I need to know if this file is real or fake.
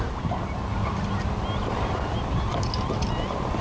real